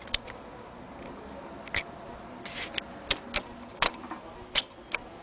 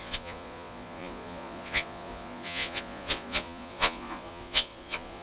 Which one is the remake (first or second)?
second